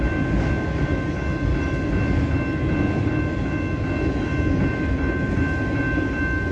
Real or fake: real